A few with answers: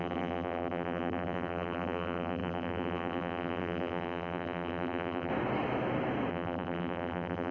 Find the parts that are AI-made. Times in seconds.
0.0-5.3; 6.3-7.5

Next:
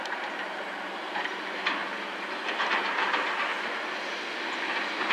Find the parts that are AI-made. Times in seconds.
0.0-1.8; 2.5-3.5

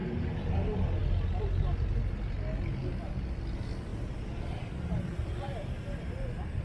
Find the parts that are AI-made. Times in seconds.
none

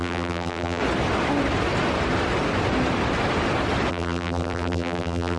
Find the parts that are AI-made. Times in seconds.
0.0-0.8; 3.9-5.4

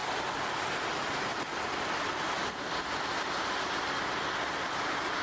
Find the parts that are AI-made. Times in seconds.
0.0-1.3; 2.8-5.2

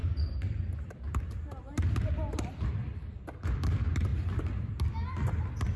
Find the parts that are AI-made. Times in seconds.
none